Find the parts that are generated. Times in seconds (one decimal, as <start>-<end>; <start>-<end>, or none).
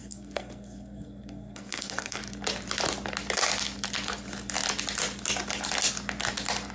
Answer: 0.0-2.2